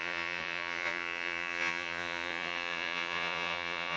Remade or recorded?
remade